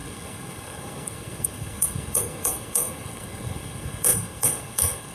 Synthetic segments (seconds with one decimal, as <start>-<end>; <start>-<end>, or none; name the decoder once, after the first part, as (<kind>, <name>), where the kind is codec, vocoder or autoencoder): 0.0-5.1 (codec, SNAC)